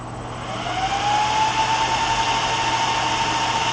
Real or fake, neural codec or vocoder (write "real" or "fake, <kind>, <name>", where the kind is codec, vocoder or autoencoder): real